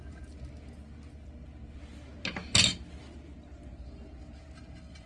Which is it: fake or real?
real